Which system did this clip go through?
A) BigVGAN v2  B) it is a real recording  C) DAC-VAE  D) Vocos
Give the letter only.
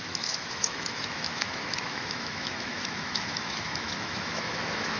C